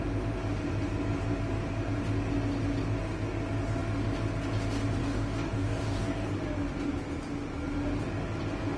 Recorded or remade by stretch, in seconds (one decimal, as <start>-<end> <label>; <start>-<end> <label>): 0.0-5.0 recorded; 5.0-6.3 remade; 6.3-8.8 recorded